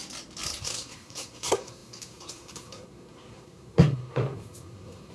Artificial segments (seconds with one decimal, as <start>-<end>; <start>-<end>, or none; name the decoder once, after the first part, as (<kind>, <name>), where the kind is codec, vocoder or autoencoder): 0.6-5.1 (codec, SNAC)